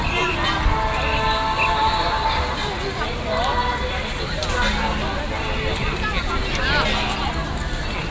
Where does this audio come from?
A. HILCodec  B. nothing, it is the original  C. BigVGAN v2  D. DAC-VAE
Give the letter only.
B